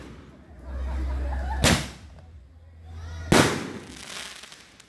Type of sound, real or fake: real